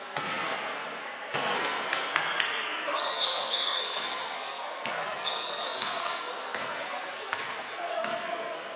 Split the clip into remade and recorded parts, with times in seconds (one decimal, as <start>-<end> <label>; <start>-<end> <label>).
0.0-8.8 remade